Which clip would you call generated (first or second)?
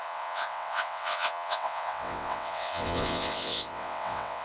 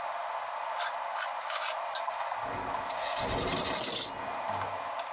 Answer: first